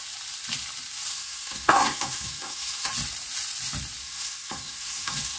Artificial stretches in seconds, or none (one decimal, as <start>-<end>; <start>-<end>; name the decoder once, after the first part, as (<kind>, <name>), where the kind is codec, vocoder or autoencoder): 1.1-2.9 (codec, SNAC); 4.0-5.4